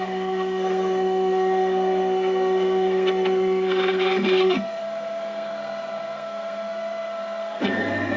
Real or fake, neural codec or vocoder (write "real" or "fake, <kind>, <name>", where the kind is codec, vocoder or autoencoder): fake, codec, SNAC